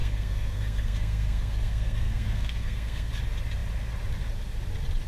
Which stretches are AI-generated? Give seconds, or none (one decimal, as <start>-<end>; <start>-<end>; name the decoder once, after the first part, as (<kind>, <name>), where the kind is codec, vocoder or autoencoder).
0.0-3.1 (codec, SNAC)